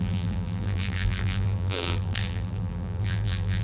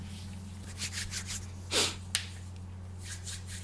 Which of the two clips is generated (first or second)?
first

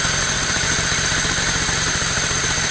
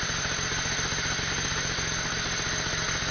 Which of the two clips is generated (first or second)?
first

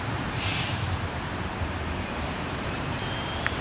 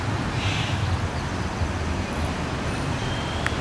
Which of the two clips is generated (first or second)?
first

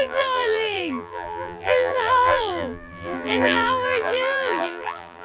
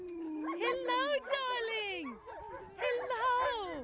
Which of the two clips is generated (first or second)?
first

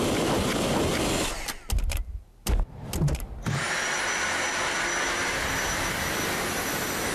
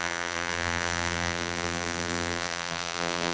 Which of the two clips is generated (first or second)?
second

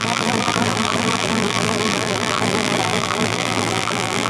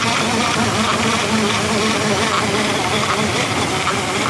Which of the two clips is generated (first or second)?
first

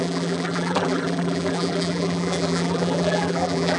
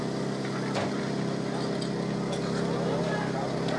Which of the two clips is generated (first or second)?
first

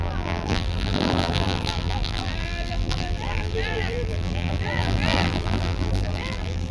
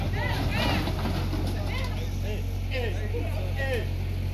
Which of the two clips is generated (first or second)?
first